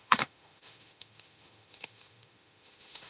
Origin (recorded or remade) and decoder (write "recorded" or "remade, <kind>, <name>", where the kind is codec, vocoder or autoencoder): remade, autoencoder, DAC-VAE